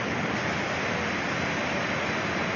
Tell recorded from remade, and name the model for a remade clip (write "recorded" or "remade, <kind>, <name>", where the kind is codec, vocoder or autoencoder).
recorded